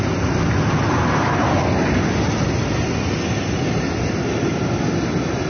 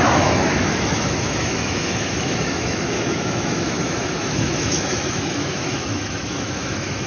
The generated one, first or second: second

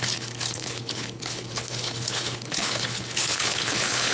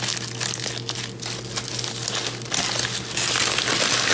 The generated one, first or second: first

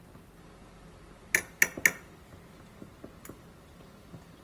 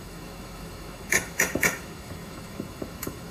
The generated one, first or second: second